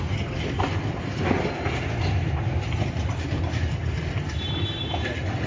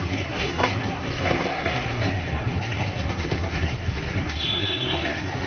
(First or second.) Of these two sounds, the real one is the first